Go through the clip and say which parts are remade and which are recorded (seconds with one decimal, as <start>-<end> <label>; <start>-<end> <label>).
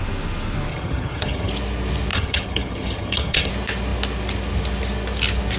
0.0-0.7 recorded; 0.7-1.5 remade; 1.5-2.1 recorded; 2.1-3.5 remade; 3.5-5.6 recorded